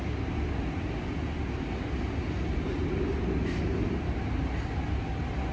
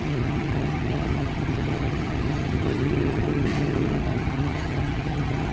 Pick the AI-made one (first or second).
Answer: second